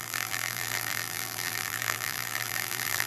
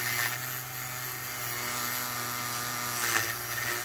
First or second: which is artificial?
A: first